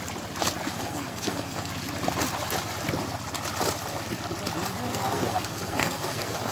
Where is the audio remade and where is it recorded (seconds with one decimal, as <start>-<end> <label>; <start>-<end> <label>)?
0.0-0.7 recorded; 0.7-1.7 remade; 1.7-4.9 recorded; 4.9-6.5 remade